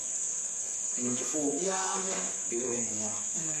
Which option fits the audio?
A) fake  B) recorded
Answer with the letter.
A